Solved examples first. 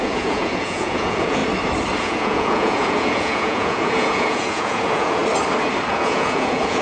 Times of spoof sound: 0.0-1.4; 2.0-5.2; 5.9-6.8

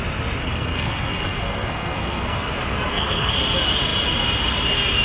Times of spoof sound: 0.4-2.5; 2.9-3.4